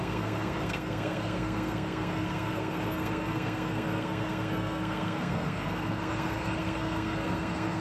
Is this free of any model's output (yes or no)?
no